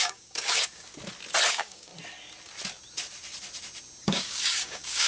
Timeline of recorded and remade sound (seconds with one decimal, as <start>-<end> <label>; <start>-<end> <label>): 0.0-0.9 remade; 0.9-1.5 recorded; 1.5-1.9 remade; 1.9-4.0 recorded; 4.0-5.1 remade